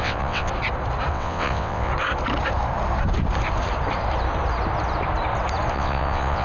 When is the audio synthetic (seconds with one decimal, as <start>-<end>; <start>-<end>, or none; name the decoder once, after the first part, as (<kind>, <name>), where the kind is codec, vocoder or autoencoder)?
0.0-0.5 (vocoder, WaveNeXt); 1.1-1.9; 5.7-6.4